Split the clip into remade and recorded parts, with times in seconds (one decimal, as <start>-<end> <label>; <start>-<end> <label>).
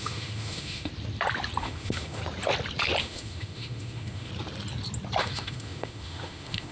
0.0-0.9 remade; 0.9-1.6 recorded; 1.6-2.2 remade; 2.2-3.0 recorded; 3.0-4.3 remade; 4.3-5.2 recorded; 5.2-6.7 remade